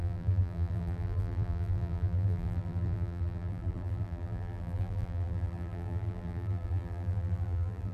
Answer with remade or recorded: remade